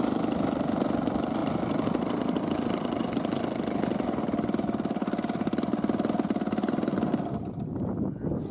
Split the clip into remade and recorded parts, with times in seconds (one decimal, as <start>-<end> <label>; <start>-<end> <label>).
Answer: 0.0-8.5 recorded